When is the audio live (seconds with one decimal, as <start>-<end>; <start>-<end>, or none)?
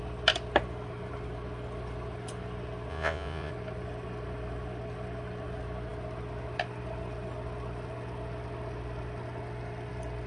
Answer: 0.0-2.9; 3.5-10.3